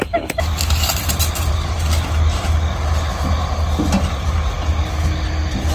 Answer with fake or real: real